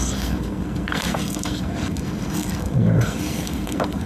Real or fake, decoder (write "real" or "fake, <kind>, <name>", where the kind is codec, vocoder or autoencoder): fake, codec, SNAC